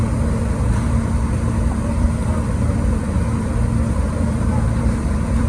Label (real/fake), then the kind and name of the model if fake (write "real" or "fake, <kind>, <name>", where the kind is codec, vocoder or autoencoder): fake, vocoder, BigVGAN v2